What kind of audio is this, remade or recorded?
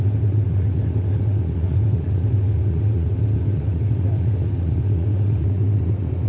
remade